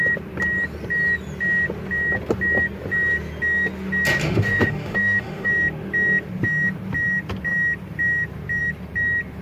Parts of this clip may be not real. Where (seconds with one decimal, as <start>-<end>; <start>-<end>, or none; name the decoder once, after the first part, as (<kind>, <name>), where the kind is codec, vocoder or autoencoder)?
4.2-5.5 (autoencoder, DAC-VAE)